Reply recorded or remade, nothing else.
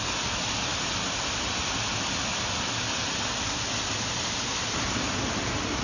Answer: recorded